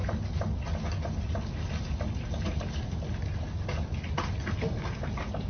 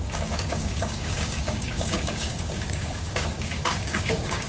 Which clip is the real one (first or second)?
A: first